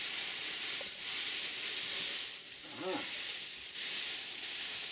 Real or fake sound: real